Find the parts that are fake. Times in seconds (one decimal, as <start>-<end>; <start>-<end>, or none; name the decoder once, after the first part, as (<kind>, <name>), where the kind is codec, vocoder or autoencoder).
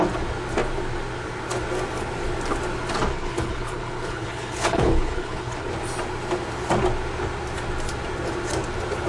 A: 3.1-5.7 (codec, HILCodec)